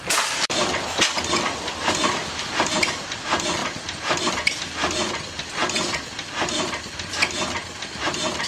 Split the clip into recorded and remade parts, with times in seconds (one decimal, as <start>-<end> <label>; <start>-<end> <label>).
0.0-3.6 remade; 3.6-4.3 recorded; 4.3-5.6 remade; 5.6-6.2 recorded; 6.2-8.5 remade